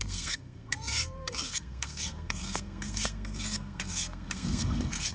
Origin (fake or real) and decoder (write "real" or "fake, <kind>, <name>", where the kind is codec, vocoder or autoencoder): fake, codec, SNAC